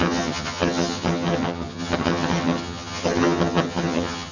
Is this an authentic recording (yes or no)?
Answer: no